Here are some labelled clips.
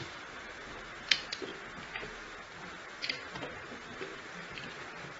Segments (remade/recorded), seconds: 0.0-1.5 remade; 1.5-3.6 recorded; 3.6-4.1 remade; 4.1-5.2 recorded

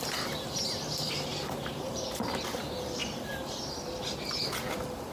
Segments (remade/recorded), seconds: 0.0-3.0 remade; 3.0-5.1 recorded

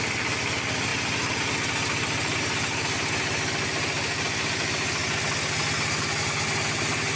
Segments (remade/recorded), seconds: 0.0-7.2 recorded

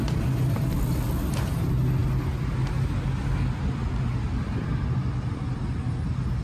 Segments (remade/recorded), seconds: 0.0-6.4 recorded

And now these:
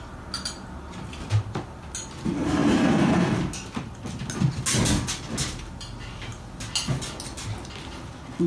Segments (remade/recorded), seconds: 0.0-8.5 recorded

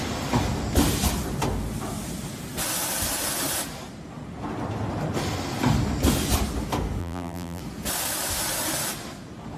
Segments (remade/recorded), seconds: 0.0-7.0 recorded; 7.0-7.6 remade; 7.6-9.6 recorded

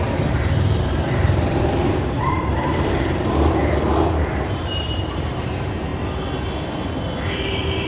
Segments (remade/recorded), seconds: 0.0-5.9 remade; 5.9-7.3 recorded; 7.3-7.9 remade